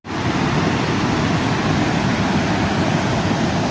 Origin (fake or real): real